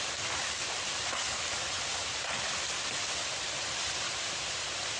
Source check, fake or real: real